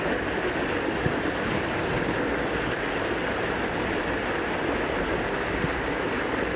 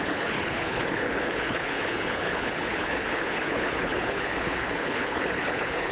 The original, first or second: first